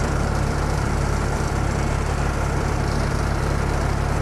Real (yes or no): no